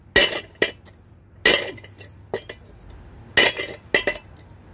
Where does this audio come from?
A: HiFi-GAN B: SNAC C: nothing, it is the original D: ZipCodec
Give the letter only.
C